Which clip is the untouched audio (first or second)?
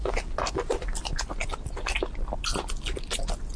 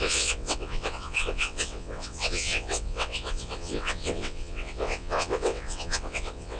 first